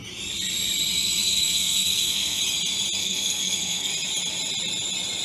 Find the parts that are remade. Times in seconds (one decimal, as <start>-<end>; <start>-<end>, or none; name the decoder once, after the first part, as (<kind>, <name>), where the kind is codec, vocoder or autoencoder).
1.2-2.4 (codec, SNAC); 3.0-3.9